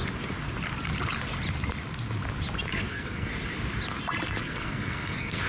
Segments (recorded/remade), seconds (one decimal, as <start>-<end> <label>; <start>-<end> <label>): 0.0-2.8 recorded; 2.8-3.3 remade; 3.3-4.4 recorded; 4.4-5.5 remade